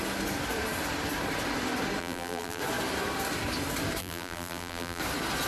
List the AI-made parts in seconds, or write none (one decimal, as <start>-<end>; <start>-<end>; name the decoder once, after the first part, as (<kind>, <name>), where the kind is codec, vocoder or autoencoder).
2.0-2.6 (vocoder, BigVGAN v2); 4.0-5.0